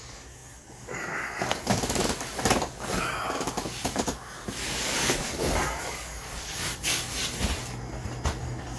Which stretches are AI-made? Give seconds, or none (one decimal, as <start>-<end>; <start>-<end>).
0.0-7.2; 8.4-8.8